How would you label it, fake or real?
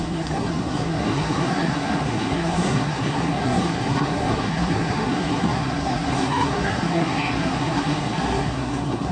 fake